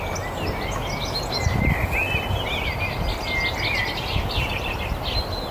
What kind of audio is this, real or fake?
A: real